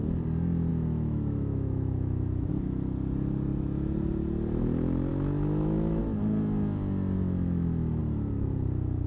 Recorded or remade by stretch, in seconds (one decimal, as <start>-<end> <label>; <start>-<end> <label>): 0.0-0.7 recorded; 0.7-2.5 remade; 2.5-5.1 recorded; 5.1-6.0 remade; 6.0-9.1 recorded